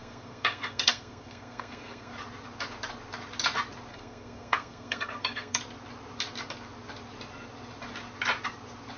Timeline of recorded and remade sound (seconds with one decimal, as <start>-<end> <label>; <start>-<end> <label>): 0.0-2.1 remade; 2.1-3.9 recorded; 3.9-5.6 remade; 5.6-9.0 recorded